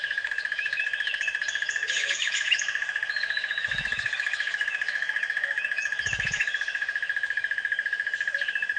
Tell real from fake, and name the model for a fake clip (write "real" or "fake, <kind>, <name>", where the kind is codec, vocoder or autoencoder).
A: fake, autoencoder, DAC-VAE